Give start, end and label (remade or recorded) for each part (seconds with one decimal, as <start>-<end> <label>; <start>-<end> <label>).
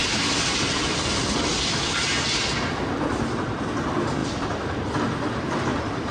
0.0-2.1 remade; 2.1-4.2 recorded; 4.2-6.1 remade